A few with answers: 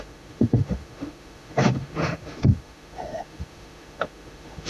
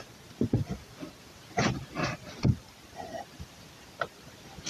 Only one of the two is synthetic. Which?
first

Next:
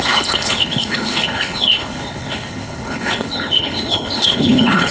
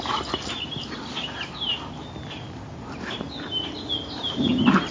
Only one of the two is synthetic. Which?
first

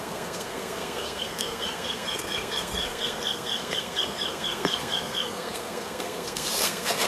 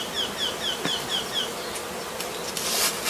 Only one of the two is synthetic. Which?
first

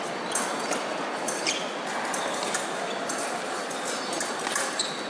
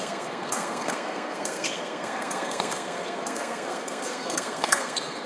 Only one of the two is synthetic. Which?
second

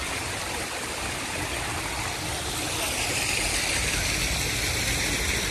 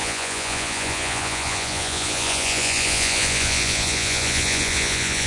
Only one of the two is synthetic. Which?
second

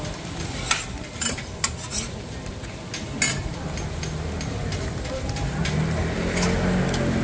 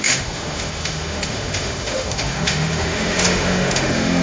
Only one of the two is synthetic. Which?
second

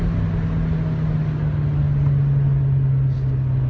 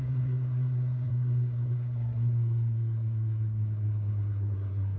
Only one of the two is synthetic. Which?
second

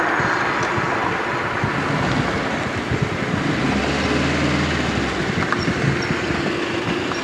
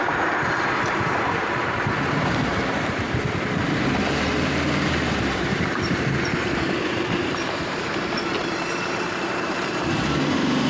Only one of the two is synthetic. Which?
second